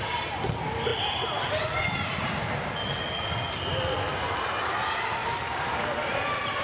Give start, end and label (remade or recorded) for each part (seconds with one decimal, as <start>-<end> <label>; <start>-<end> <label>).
0.0-5.2 recorded; 5.2-6.6 remade